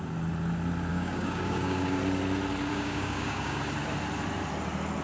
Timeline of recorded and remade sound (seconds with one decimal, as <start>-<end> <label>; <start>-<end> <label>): 0.0-0.9 recorded; 0.9-2.0 remade; 2.0-2.7 recorded; 2.7-3.6 remade; 3.6-5.0 recorded